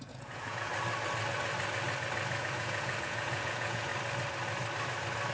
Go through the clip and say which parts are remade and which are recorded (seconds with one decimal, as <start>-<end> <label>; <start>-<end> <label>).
0.0-0.7 remade; 0.7-2.4 recorded; 2.4-3.9 remade; 3.9-5.3 recorded